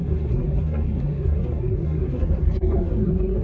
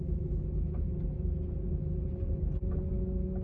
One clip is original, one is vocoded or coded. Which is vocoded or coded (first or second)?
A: first